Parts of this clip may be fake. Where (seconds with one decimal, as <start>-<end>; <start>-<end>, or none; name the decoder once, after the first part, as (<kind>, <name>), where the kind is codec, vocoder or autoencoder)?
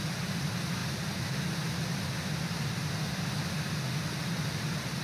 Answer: none